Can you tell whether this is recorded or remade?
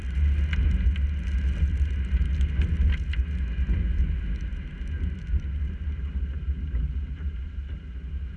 recorded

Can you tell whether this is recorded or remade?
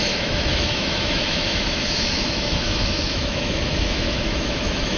remade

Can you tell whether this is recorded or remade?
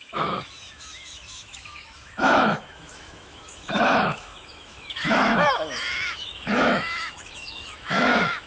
remade